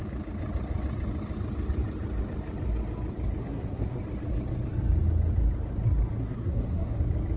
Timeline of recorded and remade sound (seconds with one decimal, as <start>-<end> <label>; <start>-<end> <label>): 0.0-3.4 recorded; 3.4-4.0 remade; 4.0-6.2 recorded; 6.2-7.0 remade; 7.0-7.4 recorded

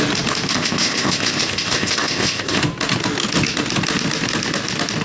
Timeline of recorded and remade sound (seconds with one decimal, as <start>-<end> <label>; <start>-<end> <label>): 0.0-0.5 recorded; 0.5-2.6 remade; 2.6-5.0 recorded

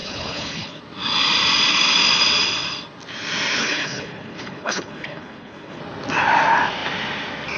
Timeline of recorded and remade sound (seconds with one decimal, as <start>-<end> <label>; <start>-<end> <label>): 0.0-0.8 remade; 0.8-3.6 recorded; 3.6-5.8 remade; 5.8-7.6 recorded

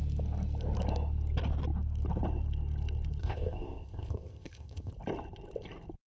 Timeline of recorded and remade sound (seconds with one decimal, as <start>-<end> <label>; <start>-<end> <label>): 0.0-3.2 recorded; 3.2-4.9 remade; 4.9-6.1 recorded

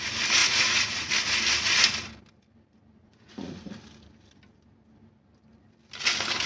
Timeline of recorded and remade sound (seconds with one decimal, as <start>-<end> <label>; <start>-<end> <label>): 0.0-0.4 recorded; 0.4-1.1 remade; 1.1-3.0 recorded; 3.0-3.6 remade; 3.6-6.5 recorded

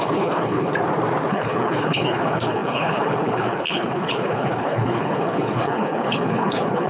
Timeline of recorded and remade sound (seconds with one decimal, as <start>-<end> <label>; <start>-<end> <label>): 0.0-0.7 remade; 0.7-1.3 recorded; 1.3-6.9 remade

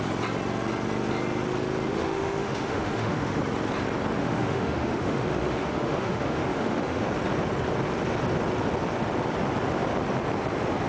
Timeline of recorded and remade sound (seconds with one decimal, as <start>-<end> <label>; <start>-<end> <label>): 0.0-1.9 recorded; 1.9-3.4 remade; 3.4-4.2 recorded; 4.2-7.0 remade; 7.0-10.9 recorded